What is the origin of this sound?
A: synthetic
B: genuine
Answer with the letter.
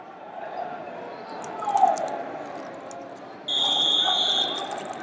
B